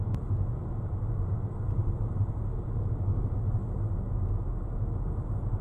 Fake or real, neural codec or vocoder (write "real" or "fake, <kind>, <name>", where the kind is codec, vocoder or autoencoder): real